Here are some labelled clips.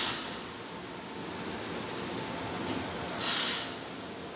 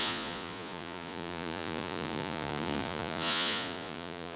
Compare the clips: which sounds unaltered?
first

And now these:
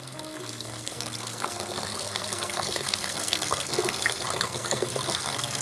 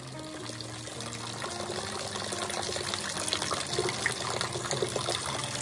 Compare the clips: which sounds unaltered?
second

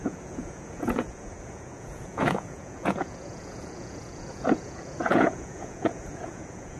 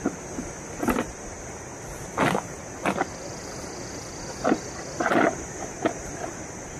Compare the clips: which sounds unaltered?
second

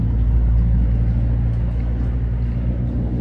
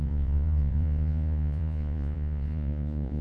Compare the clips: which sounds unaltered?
first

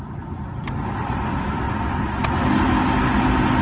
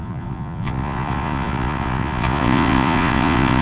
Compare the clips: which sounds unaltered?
first